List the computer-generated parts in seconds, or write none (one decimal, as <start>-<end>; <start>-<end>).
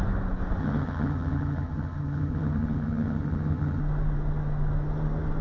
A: 0.6-3.8